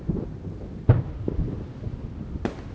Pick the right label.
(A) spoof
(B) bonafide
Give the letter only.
B